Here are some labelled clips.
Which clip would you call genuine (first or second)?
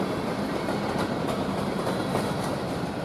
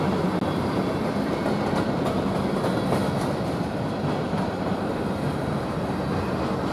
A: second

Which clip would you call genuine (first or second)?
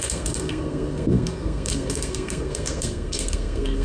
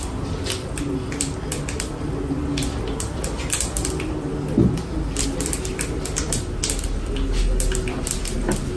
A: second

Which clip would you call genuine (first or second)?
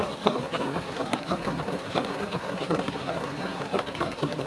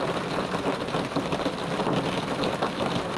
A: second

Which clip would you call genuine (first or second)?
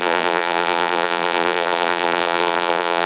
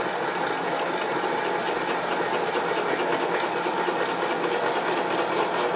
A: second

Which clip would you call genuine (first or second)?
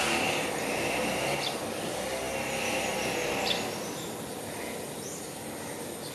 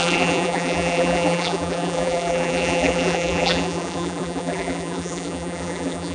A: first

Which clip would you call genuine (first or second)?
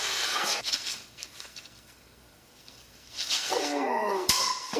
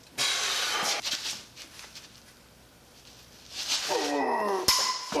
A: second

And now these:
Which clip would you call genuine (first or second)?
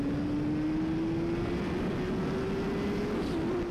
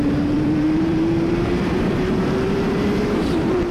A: first